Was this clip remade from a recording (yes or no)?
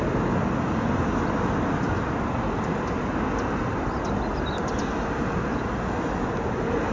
no